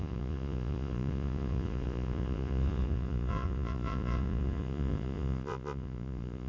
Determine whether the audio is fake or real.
fake